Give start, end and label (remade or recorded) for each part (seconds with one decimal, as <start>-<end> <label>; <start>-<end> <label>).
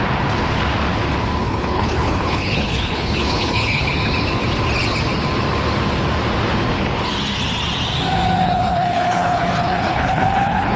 0.0-1.4 recorded; 1.4-3.9 remade; 3.9-8.4 recorded; 8.4-10.8 remade